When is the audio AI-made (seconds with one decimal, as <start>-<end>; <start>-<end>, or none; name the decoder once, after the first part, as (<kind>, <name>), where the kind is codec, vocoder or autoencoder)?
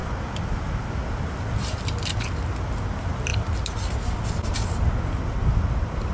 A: none